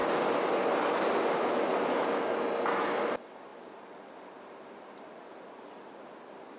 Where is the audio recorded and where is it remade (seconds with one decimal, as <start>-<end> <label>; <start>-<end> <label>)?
0.0-3.5 recorded; 3.5-5.1 remade; 5.1-6.6 recorded